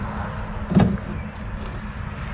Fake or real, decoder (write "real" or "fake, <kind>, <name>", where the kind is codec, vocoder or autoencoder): real